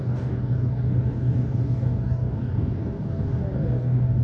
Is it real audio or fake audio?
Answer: fake